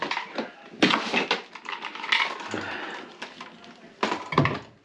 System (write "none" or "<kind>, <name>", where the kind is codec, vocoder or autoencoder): none